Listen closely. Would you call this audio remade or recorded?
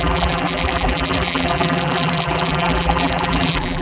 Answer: remade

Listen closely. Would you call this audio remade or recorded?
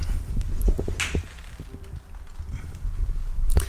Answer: recorded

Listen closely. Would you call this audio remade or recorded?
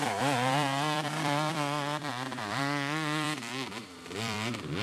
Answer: remade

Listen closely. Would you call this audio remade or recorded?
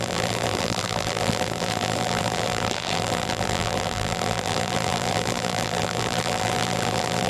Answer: remade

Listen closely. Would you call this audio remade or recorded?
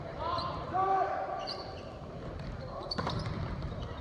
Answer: remade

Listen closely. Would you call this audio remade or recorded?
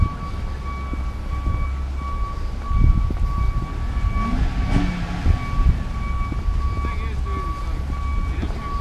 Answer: recorded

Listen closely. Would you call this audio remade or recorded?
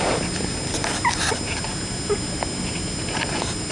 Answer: recorded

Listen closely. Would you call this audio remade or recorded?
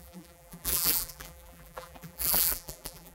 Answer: remade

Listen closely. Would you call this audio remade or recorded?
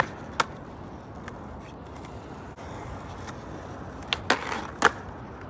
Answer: recorded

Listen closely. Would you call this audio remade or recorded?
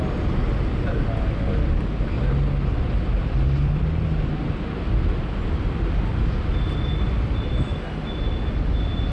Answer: recorded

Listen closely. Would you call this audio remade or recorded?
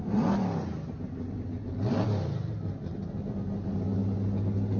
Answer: recorded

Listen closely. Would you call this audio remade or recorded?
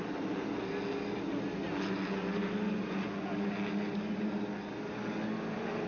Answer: recorded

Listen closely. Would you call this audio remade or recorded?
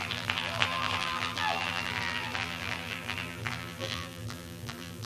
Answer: remade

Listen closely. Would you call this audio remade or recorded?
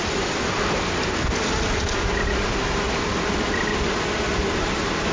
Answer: recorded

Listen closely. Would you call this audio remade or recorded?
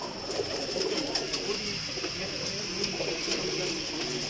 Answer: recorded